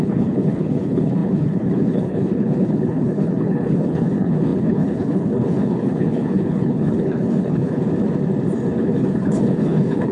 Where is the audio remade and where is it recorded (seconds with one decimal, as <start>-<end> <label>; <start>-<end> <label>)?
0.0-7.8 remade; 7.8-8.8 recorded; 8.8-10.1 remade